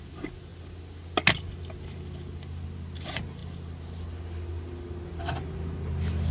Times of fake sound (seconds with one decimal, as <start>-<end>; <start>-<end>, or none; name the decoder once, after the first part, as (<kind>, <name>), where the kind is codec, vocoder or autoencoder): none